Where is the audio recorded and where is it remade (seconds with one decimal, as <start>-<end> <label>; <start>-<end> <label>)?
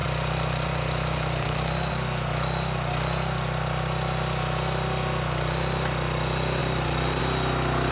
0.0-1.9 remade; 1.9-6.6 recorded; 6.6-7.2 remade; 7.2-7.9 recorded